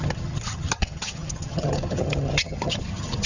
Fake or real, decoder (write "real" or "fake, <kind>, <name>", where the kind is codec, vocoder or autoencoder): fake, vocoder, HiFi-GAN